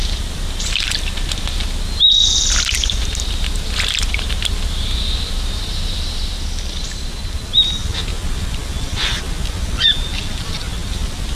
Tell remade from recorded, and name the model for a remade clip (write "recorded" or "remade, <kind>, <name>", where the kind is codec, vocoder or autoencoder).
remade, vocoder, BigVGAN v2